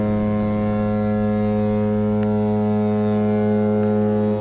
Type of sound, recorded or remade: recorded